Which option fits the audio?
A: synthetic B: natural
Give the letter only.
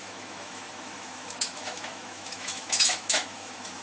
A